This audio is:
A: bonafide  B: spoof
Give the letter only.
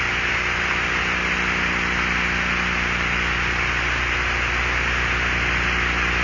A